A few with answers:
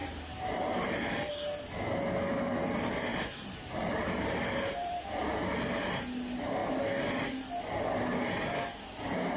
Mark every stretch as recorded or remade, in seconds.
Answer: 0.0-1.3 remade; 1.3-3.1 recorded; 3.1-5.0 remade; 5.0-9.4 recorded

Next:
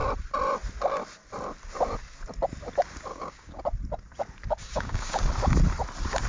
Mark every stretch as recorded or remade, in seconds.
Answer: 0.0-3.1 recorded; 3.1-3.6 remade; 3.6-4.6 recorded; 4.6-5.2 remade; 5.2-6.3 recorded

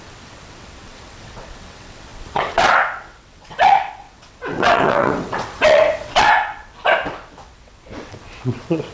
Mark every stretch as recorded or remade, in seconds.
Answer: 0.0-8.9 remade